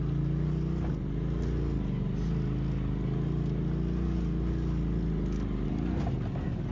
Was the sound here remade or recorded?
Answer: recorded